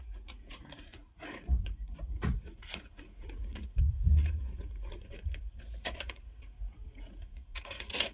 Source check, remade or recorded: remade